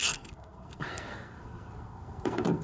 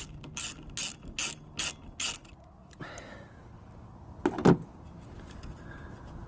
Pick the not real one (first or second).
first